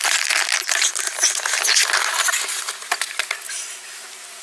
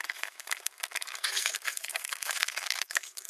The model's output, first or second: second